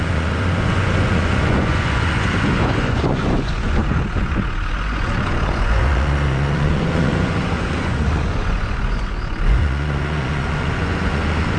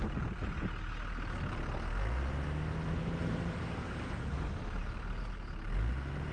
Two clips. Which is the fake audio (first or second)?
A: first